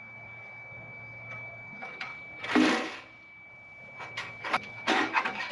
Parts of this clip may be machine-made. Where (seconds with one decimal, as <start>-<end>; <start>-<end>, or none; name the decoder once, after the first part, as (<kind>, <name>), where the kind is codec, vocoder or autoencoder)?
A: 0.0-2.1 (codec, DAC); 4.4-5.5

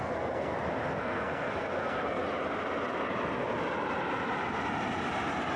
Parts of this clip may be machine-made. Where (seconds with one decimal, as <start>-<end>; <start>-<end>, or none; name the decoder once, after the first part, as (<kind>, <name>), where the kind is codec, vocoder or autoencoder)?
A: 0.0-0.5 (codec, SNAC); 1.0-2.2

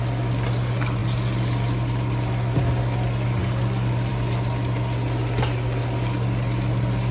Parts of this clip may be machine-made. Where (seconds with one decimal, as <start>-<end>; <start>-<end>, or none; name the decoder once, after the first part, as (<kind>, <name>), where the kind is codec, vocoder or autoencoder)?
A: none

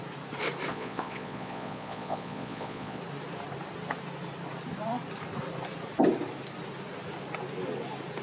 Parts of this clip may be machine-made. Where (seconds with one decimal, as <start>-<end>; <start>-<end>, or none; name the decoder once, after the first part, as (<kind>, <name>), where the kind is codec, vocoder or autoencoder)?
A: 0.7-3.0 (vocoder, Vocos)

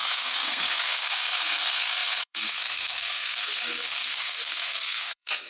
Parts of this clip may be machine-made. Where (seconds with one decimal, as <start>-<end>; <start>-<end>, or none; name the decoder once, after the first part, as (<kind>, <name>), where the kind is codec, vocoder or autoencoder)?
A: 0.0-5.5 (codec, SNAC)

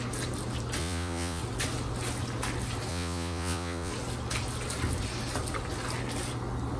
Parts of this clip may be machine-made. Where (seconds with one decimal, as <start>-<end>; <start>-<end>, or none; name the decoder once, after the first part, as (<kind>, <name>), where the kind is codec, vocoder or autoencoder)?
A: 0.8-1.4 (vocoder, Vocos); 2.9-3.9

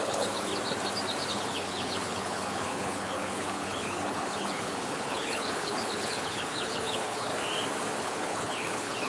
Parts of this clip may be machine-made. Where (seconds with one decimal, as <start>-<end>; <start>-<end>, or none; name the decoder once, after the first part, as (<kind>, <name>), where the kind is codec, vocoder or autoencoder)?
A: 0.0-0.5 (codec, HILCodec); 1.3-7.3; 8.0-9.1